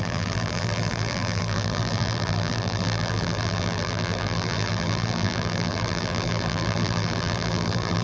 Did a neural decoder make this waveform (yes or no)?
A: yes